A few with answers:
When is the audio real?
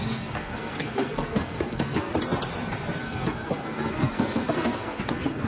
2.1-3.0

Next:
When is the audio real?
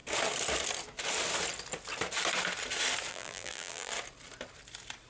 0.0-3.1; 3.9-5.1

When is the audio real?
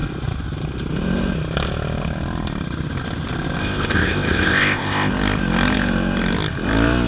0.0-3.6; 5.1-7.1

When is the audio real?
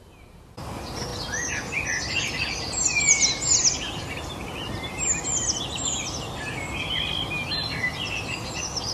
0.0-8.9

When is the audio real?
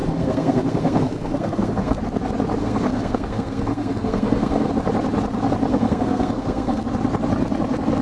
2.0-2.6; 4.7-5.7; 6.8-8.0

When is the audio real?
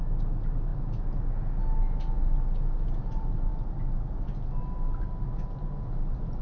0.0-6.4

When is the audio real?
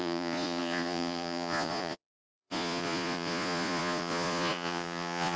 none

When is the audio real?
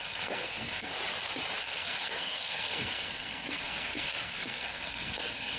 0.9-1.6